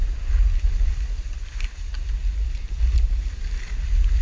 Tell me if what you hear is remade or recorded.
recorded